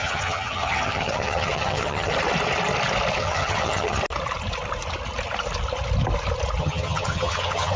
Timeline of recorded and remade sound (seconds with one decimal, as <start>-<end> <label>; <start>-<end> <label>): 0.0-2.1 remade; 2.1-3.2 recorded; 3.2-4.0 remade; 4.0-6.6 recorded; 6.6-7.8 remade